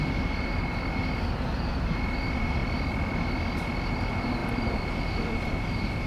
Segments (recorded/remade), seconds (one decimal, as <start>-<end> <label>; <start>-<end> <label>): 0.0-1.0 remade; 1.0-1.7 recorded; 1.7-2.6 remade; 2.6-3.9 recorded; 3.9-6.1 remade